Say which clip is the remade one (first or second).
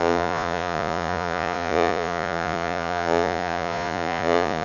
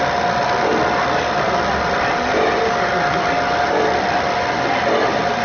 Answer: first